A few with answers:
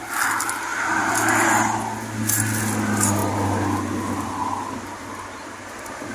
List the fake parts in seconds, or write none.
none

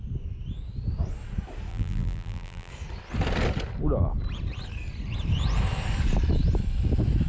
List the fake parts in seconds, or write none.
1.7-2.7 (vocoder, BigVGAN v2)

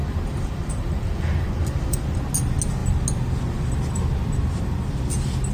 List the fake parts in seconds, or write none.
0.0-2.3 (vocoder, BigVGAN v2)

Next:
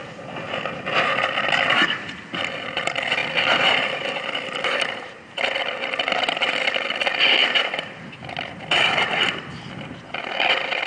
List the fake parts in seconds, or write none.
3.2-6.1 (vocoder, BigVGAN v2); 7.4-9.5